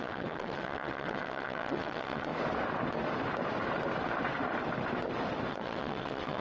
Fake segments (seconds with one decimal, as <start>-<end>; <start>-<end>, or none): 0.0-2.3; 5.5-6.4